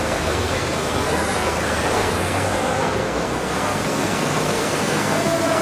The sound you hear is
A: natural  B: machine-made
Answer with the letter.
B